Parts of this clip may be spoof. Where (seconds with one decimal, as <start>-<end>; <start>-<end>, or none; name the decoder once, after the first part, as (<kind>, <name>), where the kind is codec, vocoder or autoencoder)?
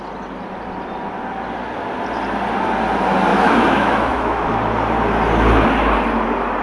3.3-4.7 (autoencoder, DAC-VAE)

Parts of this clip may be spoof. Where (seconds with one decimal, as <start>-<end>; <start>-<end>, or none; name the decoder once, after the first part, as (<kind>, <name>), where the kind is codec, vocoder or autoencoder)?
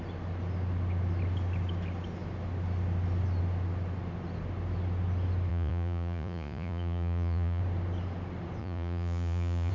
5.5-7.6 (vocoder, Vocos); 8.6-9.7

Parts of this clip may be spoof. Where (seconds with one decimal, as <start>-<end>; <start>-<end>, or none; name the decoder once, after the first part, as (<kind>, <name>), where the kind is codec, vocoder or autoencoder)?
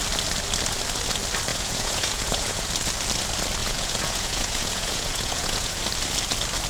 1.5-2.7 (vocoder, Vocos); 3.6-5.8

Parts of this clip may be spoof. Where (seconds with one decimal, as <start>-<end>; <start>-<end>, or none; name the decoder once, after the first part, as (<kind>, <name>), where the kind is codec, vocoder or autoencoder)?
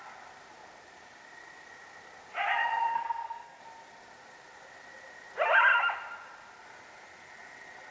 2.9-3.6 (codec, SNAC)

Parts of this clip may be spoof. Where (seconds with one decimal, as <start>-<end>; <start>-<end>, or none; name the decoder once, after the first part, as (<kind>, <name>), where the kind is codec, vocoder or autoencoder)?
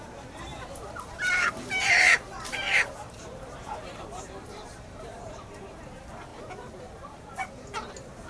0.0-6.3 (vocoder, BigVGAN v2); 6.8-8.3